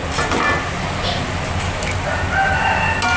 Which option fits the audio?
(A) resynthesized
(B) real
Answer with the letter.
B